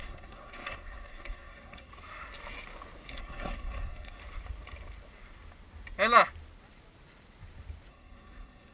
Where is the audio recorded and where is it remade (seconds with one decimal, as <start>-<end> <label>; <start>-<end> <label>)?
0.0-1.9 remade; 1.9-3.1 recorded; 3.1-4.2 remade; 4.2-7.9 recorded; 7.9-8.7 remade